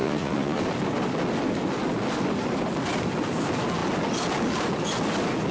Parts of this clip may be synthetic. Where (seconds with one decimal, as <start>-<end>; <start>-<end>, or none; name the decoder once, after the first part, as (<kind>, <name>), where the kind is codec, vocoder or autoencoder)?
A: 0.0-0.6 (vocoder, Vocos)